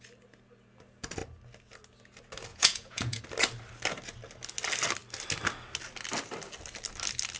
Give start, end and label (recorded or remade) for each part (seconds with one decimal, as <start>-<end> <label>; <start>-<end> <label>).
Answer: 0.0-2.5 recorded; 2.5-3.2 remade; 3.2-7.4 recorded